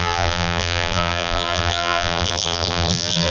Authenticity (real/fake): fake